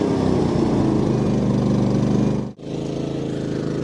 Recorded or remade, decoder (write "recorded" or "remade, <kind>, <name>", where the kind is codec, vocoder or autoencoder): recorded